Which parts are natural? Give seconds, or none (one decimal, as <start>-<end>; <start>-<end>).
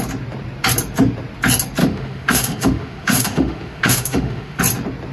0.0-1.8; 4.6-5.1